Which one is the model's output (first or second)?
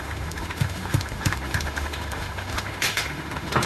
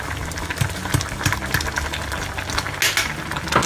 first